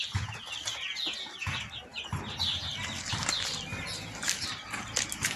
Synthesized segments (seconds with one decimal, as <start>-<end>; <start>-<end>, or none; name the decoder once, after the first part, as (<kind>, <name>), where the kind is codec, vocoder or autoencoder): none